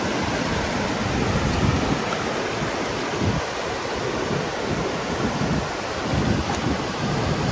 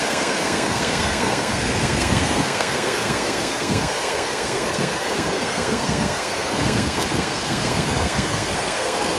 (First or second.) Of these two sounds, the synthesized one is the second